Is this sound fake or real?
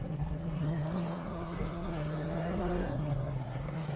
fake